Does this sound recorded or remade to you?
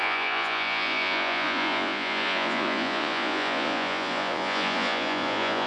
remade